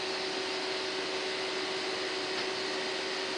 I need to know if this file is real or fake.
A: real